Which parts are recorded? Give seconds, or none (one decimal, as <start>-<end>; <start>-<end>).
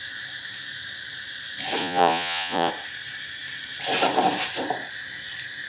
0.0-1.8; 2.7-5.7